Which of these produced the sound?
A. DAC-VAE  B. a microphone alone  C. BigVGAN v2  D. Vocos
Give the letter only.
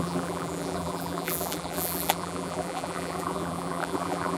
C